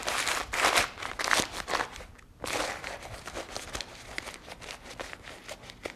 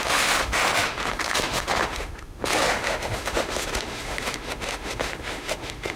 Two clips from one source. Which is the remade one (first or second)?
second